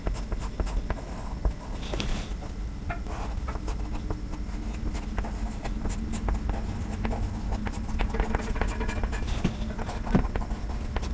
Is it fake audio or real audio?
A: real